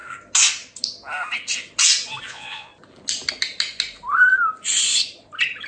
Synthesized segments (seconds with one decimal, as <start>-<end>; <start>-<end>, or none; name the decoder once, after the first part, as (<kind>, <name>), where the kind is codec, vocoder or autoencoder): 2.3-2.7 (vocoder, Vocos)